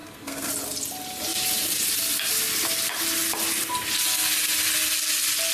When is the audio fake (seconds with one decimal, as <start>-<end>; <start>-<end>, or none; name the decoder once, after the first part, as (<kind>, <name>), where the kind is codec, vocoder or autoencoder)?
0.0-0.5 (codec, SNAC)